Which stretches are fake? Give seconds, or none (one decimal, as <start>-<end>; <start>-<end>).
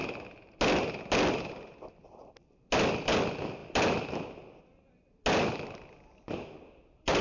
none